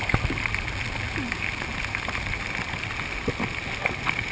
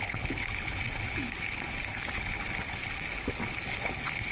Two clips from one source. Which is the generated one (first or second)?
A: second